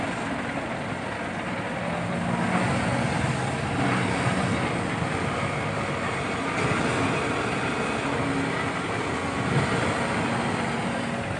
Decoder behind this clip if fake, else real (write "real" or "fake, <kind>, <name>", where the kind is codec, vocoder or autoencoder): real